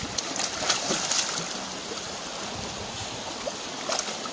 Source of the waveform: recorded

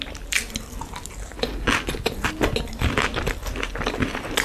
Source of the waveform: recorded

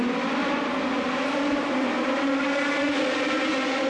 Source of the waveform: recorded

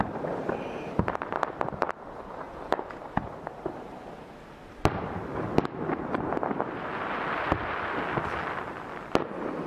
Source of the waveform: recorded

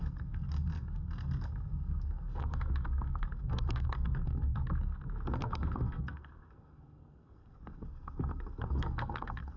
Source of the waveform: remade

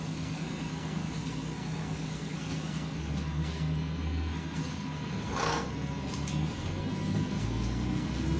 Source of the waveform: remade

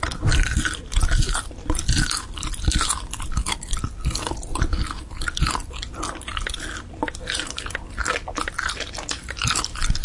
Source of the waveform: recorded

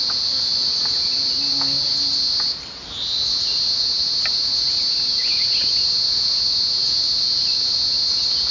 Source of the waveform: recorded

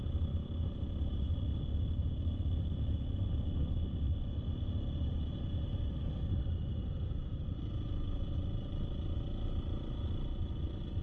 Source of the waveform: recorded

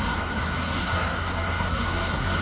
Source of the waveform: remade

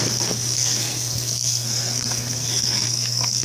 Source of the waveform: remade